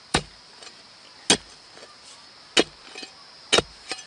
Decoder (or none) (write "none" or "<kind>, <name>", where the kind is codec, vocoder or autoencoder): none